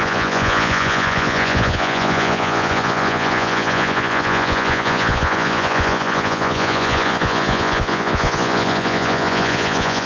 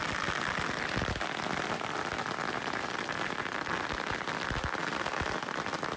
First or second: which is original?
second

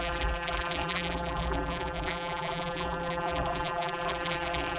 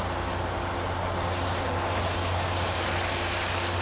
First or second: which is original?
second